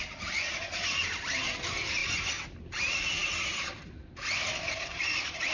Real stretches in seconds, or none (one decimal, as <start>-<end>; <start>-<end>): 2.0-2.8